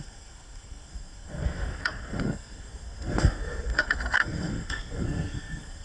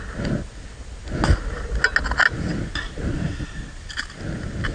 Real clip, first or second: second